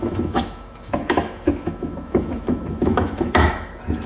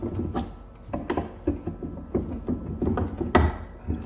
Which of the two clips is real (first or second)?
second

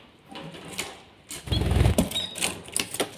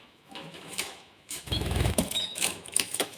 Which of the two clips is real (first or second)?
first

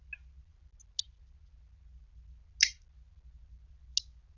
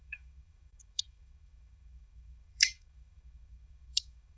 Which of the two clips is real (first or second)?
first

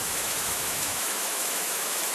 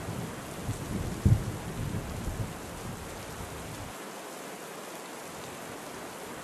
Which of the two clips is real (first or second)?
second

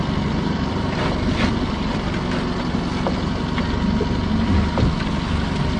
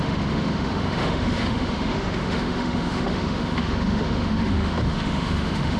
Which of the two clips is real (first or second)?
first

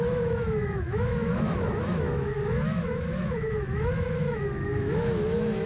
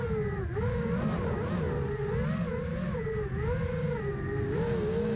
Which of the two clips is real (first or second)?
second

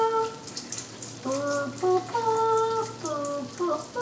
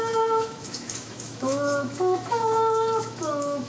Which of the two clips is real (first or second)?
first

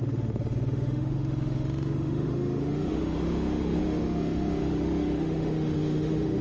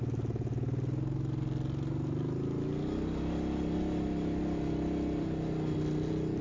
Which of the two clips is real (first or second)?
second